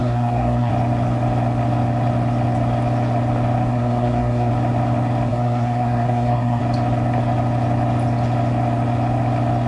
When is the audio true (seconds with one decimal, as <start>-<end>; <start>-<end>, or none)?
0.7-3.7; 4.5-5.3; 6.6-9.7